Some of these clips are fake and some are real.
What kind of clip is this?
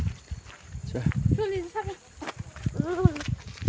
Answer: real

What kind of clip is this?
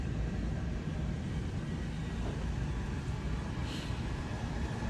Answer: fake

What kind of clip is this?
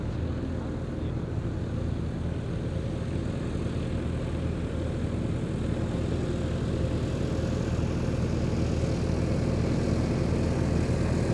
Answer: real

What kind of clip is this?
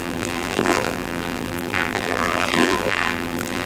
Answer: fake